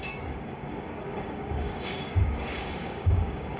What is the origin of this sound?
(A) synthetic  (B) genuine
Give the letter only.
A